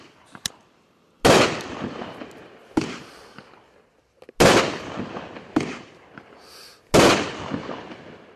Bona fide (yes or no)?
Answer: yes